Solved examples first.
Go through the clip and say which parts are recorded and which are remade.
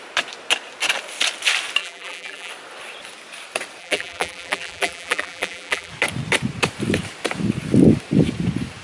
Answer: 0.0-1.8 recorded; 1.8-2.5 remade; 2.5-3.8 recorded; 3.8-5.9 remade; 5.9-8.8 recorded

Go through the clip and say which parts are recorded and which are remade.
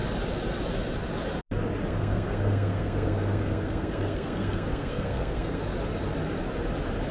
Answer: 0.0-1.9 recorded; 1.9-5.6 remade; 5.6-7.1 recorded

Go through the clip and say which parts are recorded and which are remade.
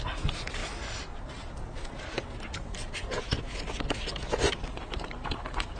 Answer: 0.0-5.8 recorded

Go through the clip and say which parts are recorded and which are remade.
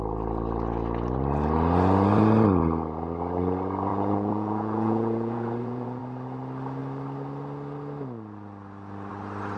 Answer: 0.0-3.9 recorded; 3.9-6.0 remade; 6.0-9.6 recorded